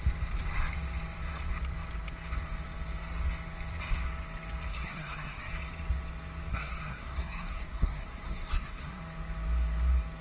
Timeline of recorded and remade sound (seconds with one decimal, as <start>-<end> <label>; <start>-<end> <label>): 0.0-4.7 recorded; 4.7-5.5 remade; 5.5-6.5 recorded; 6.5-9.0 remade; 9.0-10.2 recorded